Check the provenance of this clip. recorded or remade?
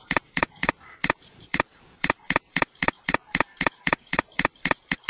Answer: remade